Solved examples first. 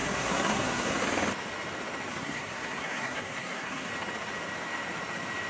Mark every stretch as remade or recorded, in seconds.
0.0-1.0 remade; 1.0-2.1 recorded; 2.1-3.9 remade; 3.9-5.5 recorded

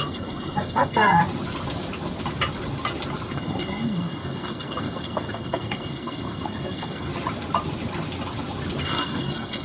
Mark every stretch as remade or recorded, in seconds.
0.0-1.2 remade; 1.2-3.3 recorded; 3.3-7.1 remade; 7.1-8.8 recorded; 8.8-9.6 remade

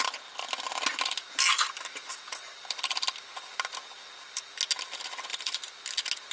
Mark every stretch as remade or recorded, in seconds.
0.0-5.3 recorded; 5.3-5.8 remade; 5.8-6.3 recorded

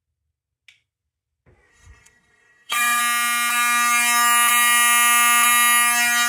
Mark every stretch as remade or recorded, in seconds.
0.0-1.7 recorded; 1.7-3.0 remade; 3.0-6.3 recorded

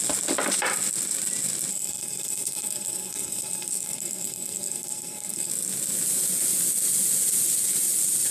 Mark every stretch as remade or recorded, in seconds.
0.0-1.7 recorded; 1.7-5.5 remade; 5.5-8.3 recorded

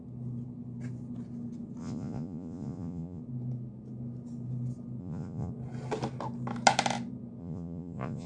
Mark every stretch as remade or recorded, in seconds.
0.0-1.8 recorded; 1.8-3.2 remade; 3.2-5.0 recorded; 5.0-5.5 remade; 5.5-7.4 recorded; 7.4-8.3 remade

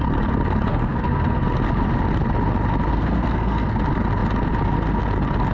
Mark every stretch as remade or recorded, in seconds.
0.0-0.7 recorded; 0.7-1.4 remade; 1.4-2.9 recorded; 2.9-3.7 remade; 3.7-5.5 recorded